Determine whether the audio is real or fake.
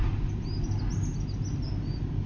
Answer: real